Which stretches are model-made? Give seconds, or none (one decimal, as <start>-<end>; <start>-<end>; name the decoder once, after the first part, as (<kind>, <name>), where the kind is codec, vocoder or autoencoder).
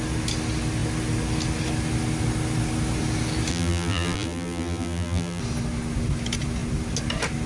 3.5-5.4 (vocoder, BigVGAN v2)